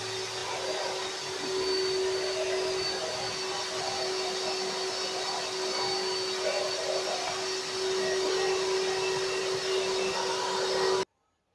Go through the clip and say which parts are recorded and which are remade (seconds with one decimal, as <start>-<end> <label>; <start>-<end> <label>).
0.0-11.5 recorded